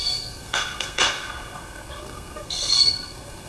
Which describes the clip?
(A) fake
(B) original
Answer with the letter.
A